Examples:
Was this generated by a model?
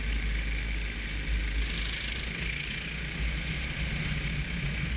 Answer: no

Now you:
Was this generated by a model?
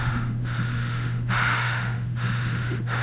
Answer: yes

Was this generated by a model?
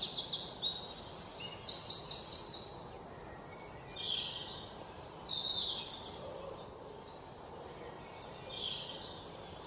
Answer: no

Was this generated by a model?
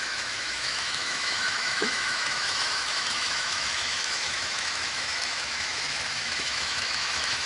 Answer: yes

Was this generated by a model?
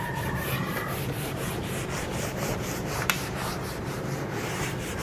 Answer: yes